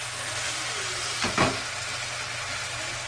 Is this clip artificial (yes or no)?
no